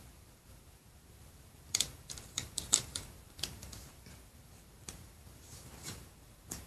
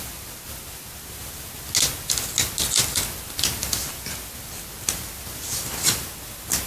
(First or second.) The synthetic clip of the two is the first